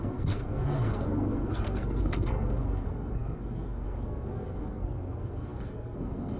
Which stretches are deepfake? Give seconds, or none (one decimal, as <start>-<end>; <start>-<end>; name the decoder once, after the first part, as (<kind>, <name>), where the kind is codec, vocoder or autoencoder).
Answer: 0.0-6.4 (codec, SNAC)

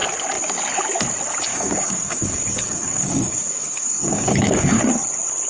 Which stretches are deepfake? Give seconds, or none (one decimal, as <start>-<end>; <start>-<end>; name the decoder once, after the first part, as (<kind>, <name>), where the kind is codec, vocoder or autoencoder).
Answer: 1.5-4.8 (codec, DAC)

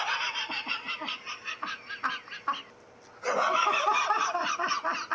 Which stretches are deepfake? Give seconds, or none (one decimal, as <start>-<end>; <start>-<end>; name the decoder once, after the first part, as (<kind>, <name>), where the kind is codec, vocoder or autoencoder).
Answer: none

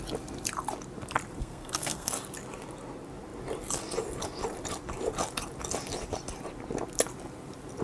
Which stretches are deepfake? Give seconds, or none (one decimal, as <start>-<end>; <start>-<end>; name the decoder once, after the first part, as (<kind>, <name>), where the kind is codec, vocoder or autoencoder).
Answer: 1.4-2.1 (codec, SNAC)

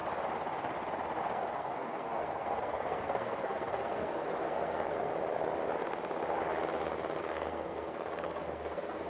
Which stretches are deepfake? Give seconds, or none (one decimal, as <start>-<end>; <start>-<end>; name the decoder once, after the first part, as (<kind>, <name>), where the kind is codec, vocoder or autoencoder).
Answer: 1.2-5.1 (codec, SNAC); 7.2-9.1

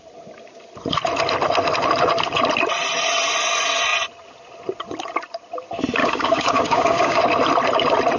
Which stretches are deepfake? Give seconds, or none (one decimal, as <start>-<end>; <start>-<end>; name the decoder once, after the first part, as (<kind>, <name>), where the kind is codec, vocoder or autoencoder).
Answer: 6.0-7.2 (codec, DAC)

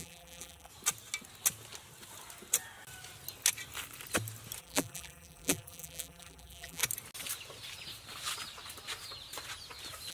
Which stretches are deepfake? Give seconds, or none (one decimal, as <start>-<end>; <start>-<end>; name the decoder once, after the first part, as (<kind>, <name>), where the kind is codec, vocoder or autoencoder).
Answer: 0.0-0.7 (vocoder, BigVGAN v2); 4.6-6.8

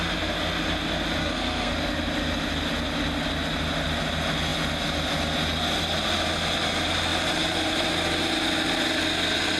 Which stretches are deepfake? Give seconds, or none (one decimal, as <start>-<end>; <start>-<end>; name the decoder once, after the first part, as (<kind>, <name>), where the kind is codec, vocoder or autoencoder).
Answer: 1.2-1.7 (codec, SNAC)